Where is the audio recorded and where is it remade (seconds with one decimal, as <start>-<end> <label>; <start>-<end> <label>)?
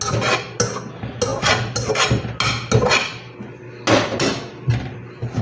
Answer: 0.0-5.4 recorded